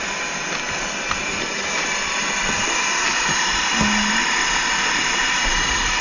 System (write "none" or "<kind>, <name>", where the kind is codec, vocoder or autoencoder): none